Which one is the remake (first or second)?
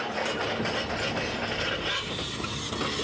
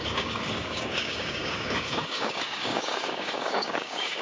second